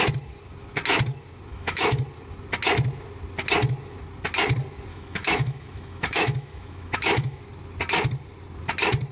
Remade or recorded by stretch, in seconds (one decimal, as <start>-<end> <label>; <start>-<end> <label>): 0.0-1.5 recorded; 1.5-2.0 remade; 2.0-4.9 recorded; 4.9-7.4 remade; 7.4-9.1 recorded